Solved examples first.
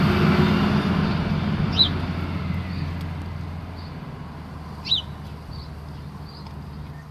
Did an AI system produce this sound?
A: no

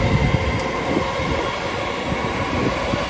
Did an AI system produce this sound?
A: no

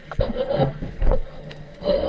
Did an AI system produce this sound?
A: yes